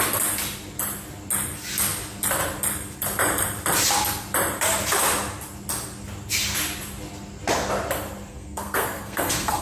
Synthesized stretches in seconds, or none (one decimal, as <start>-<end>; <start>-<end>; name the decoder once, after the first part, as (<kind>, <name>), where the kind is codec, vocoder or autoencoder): 8.3-9.6 (codec, SNAC)